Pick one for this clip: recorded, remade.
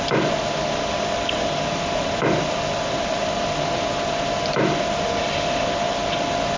recorded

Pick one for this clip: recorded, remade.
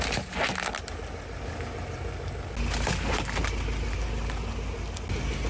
recorded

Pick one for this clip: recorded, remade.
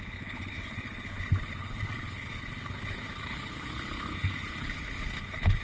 remade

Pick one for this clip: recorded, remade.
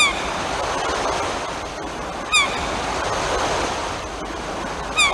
recorded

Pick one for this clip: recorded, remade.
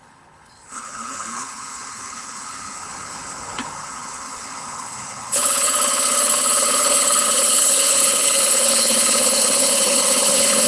remade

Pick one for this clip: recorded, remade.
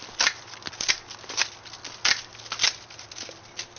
recorded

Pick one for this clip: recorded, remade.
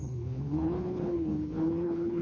remade